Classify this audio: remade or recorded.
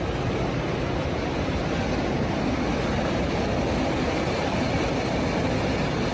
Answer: recorded